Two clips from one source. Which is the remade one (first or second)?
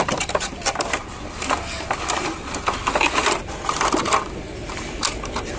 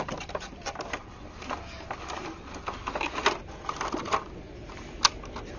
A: first